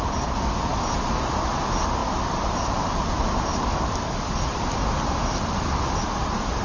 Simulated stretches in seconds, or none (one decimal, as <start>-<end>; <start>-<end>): 2.0-6.0